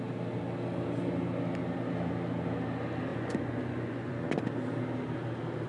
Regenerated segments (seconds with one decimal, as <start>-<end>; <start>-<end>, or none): 3.1-4.4